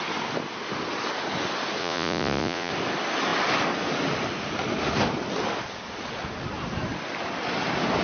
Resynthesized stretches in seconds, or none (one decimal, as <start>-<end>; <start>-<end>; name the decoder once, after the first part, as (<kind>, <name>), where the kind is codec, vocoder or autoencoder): 1.8-2.7 (vocoder, Vocos)